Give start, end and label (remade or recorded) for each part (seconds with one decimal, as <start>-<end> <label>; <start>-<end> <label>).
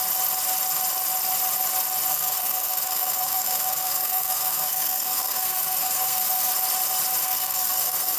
0.0-2.1 recorded; 2.1-6.5 remade; 6.5-7.2 recorded; 7.2-8.2 remade